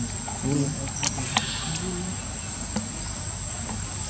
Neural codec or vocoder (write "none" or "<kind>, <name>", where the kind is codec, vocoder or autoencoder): none